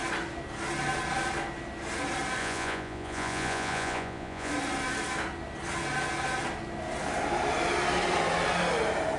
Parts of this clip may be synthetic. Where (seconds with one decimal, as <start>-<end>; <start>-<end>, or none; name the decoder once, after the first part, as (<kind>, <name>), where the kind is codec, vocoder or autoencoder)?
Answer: 2.4-4.5 (vocoder, Vocos)